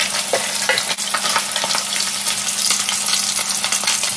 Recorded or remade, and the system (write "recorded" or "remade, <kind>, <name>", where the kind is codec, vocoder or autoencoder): recorded